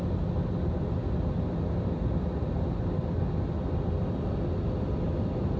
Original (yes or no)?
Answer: yes